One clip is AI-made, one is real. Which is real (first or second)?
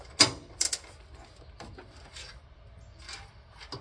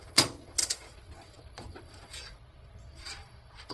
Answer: first